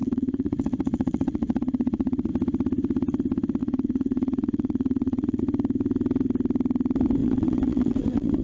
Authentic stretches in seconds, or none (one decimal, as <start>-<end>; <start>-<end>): 2.3-3.6; 5.4-7.2

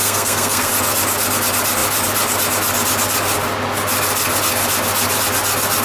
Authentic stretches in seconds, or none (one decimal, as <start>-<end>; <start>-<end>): 0.7-5.8

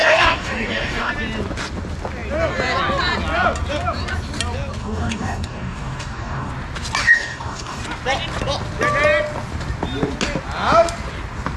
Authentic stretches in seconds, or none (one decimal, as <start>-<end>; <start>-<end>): 1.1-4.8; 6.5-7.0; 7.8-11.6

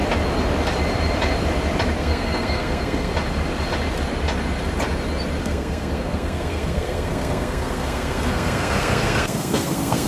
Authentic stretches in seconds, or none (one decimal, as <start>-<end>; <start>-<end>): 0.0-2.0; 3.1-5.4

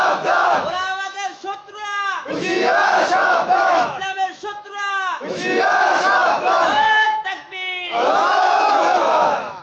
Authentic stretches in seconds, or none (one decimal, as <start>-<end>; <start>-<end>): none

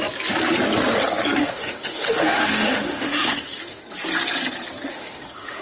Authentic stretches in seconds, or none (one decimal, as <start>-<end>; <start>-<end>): 0.0-1.4; 3.8-4.9

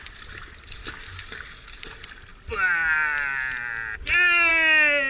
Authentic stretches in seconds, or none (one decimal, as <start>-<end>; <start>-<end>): 0.0-5.1

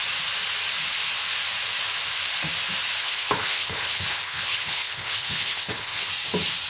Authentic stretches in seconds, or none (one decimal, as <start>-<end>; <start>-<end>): 0.0-3.0; 6.1-6.7